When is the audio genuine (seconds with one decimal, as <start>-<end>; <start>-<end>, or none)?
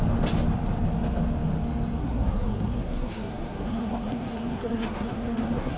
0.0-2.0